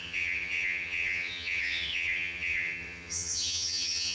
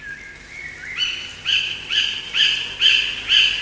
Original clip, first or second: second